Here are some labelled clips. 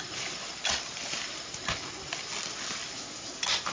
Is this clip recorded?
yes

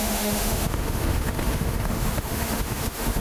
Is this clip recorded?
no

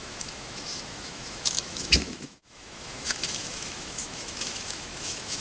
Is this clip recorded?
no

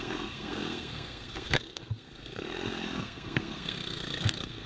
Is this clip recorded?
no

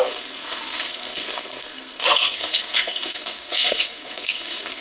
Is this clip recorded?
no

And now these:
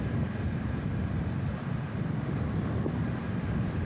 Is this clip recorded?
yes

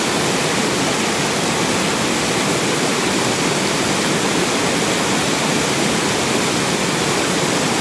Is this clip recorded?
yes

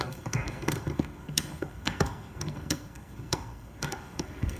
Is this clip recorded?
no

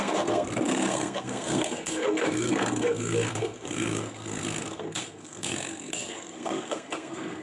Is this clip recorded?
no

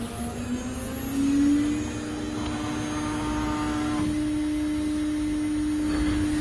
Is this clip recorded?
yes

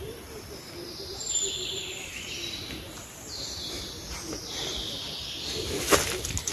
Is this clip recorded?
yes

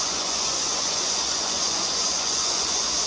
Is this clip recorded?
no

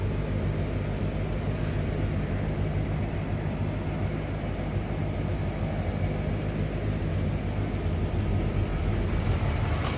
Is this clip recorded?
yes